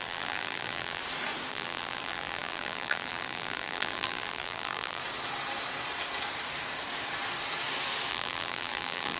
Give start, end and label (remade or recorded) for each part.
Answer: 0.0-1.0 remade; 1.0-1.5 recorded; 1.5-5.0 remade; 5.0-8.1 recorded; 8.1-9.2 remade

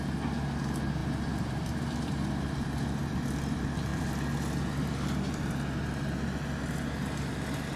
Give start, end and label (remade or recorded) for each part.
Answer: 0.0-1.0 recorded; 1.0-2.1 remade; 2.1-7.8 recorded